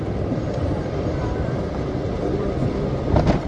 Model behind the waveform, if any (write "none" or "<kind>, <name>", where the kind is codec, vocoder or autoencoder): vocoder, BigVGAN v2